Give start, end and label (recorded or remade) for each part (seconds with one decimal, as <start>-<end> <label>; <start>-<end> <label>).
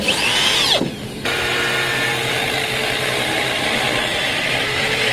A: 0.0-4.1 recorded; 4.1-5.1 remade